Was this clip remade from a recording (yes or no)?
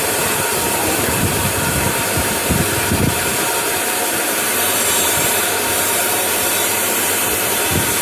yes